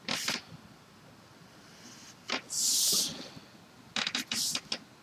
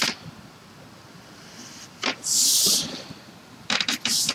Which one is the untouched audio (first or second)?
first